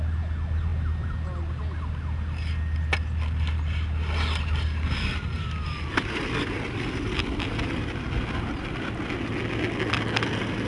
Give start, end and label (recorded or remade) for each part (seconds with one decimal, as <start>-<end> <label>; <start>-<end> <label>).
0.0-10.7 recorded